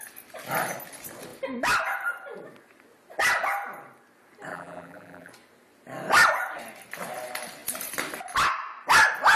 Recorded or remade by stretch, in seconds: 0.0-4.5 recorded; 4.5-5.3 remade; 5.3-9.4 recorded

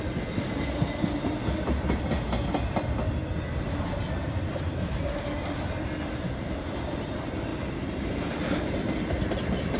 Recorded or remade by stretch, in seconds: 0.0-9.8 recorded